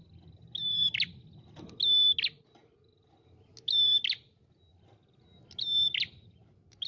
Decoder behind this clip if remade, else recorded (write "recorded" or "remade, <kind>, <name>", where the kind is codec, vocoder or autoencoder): recorded